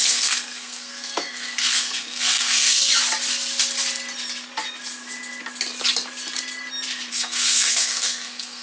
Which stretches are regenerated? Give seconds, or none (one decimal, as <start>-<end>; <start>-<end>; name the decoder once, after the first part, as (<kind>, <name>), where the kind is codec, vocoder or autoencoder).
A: 0.0-2.9 (codec, SNAC); 7.1-8.6